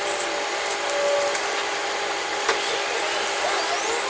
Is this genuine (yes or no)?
yes